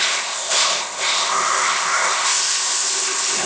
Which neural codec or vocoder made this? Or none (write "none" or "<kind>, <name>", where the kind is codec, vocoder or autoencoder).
codec, ZipCodec